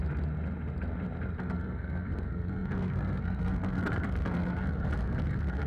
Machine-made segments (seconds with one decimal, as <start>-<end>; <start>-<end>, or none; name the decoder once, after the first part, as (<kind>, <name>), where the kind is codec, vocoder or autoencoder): 1.4-5.7 (codec, SNAC)